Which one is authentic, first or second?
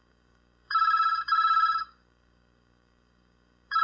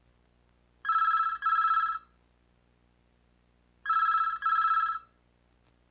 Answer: second